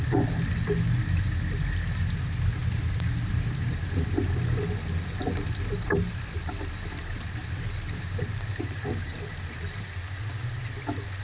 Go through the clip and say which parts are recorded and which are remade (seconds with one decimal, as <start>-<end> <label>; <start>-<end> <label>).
0.0-11.2 recorded